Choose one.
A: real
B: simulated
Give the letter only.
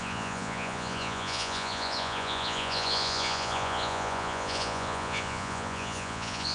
B